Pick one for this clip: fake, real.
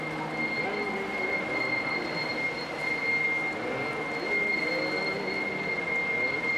real